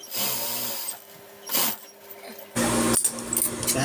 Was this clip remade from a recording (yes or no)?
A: no